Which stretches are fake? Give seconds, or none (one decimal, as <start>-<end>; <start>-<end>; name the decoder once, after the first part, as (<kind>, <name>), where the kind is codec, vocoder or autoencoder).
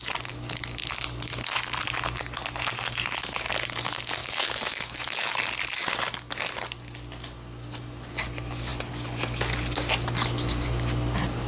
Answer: 4.2-5.3 (autoencoder, DAC-VAE)